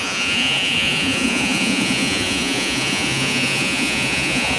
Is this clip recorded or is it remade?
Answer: remade